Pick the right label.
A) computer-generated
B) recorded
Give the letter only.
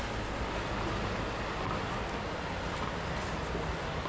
B